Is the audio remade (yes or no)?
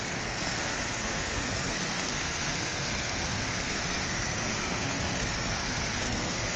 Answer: yes